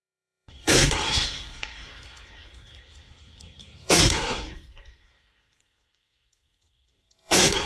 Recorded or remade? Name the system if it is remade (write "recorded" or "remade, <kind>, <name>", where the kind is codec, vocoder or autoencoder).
remade, codec, SNAC